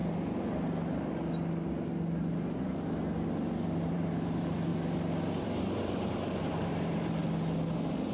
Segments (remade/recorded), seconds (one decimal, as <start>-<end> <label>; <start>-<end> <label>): 0.0-3.9 recorded; 3.9-4.7 remade; 4.7-5.4 recorded; 5.4-7.2 remade; 7.2-8.1 recorded